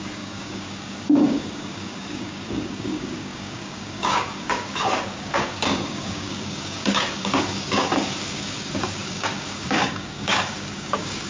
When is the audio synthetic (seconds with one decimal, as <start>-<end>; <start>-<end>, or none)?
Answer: 0.0-11.3